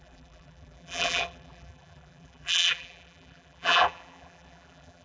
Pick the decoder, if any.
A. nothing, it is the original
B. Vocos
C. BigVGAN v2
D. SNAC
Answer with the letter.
C